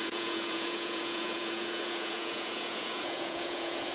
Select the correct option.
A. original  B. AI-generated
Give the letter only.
B